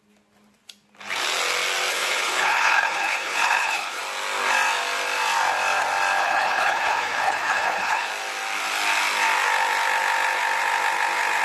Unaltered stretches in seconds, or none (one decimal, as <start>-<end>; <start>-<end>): 0.0-1.9; 4.0-6.2; 8.1-11.4

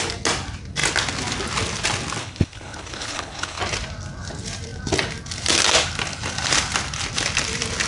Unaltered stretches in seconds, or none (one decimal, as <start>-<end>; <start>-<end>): 0.0-2.2; 3.6-7.9

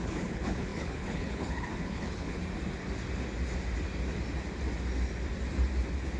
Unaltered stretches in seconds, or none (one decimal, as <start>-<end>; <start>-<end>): 2.4-6.2

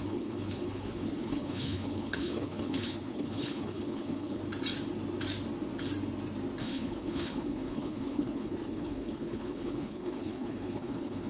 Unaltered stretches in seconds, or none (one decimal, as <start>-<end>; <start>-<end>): 4.4-6.6

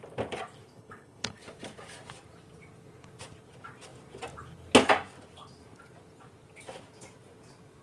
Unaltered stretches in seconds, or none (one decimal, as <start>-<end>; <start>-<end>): 0.0-0.7; 1.4-7.8

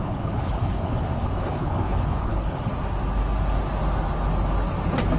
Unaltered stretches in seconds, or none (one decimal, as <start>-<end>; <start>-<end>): 2.7-5.2

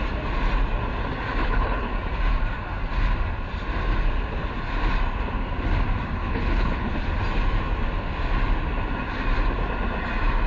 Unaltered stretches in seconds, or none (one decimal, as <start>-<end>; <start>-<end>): 0.0-1.4; 1.9-6.2; 6.9-10.5